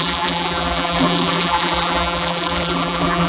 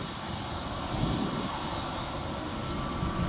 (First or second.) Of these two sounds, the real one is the second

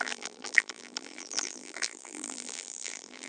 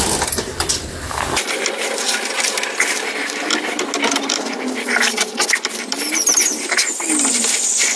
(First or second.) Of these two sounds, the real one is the second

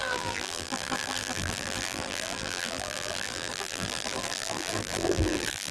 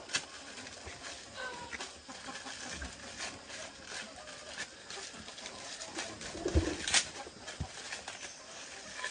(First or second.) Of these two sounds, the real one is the second